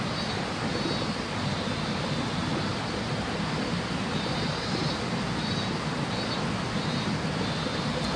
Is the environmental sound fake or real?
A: real